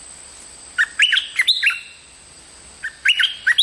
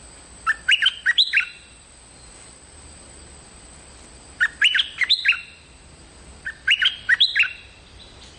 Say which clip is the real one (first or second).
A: first